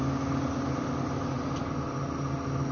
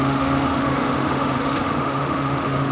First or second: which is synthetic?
second